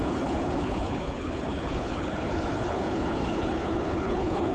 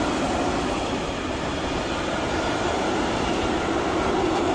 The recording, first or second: second